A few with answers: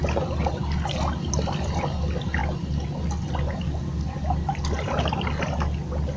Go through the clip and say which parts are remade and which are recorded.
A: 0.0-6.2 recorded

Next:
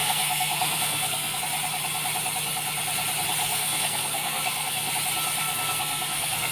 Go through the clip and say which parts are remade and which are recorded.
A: 0.0-1.4 remade; 1.4-3.4 recorded; 3.4-4.9 remade; 4.9-5.4 recorded; 5.4-6.5 remade

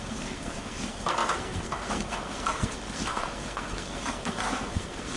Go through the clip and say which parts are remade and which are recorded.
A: 0.0-5.2 remade